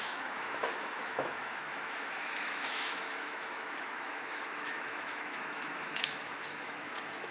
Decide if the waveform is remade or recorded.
remade